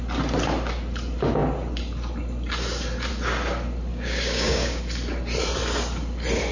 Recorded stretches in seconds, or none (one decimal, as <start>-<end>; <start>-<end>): 0.0-3.9; 4.8-6.5